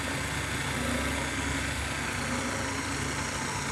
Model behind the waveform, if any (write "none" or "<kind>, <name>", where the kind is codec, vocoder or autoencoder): none